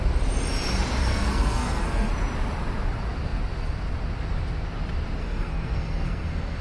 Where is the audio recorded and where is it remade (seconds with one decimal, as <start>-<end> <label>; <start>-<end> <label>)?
0.0-1.0 recorded; 1.0-2.1 remade; 2.1-5.2 recorded; 5.2-6.6 remade